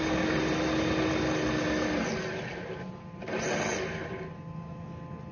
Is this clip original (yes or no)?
yes